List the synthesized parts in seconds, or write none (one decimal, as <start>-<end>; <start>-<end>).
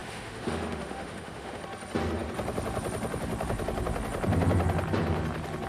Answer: 0.0-1.6